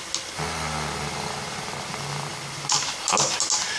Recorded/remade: recorded